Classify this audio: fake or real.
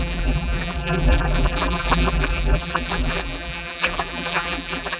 fake